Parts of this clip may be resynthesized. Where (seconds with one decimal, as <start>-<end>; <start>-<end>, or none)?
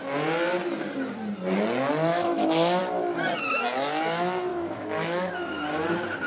2.1-2.8; 4.5-5.3